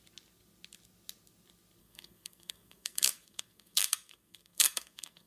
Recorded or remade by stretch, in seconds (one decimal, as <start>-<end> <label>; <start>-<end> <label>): 0.0-1.8 recorded; 1.8-5.3 remade